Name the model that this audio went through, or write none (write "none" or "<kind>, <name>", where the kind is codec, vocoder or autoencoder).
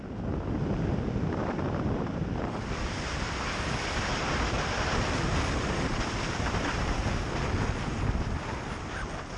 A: none